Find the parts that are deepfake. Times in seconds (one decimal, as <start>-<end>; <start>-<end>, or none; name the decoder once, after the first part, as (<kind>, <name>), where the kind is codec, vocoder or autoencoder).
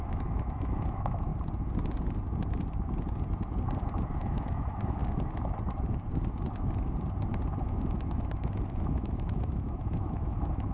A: 0.0-1.3 (autoencoder, DAC-VAE); 4.2-5.0; 7.6-10.7